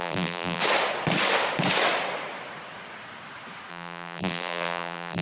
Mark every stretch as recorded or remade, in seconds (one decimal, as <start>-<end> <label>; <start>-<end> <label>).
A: 0.0-0.6 remade; 0.6-3.7 recorded; 3.7-5.2 remade